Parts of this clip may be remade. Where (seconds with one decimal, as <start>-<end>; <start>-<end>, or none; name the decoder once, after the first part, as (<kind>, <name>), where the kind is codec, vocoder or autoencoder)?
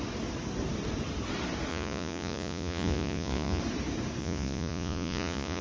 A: 1.7-3.6 (vocoder, Vocos); 4.2-5.6